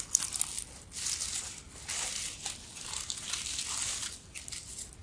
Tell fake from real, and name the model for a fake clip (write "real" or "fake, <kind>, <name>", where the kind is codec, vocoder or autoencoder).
real